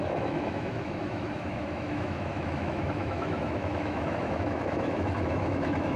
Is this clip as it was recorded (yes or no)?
no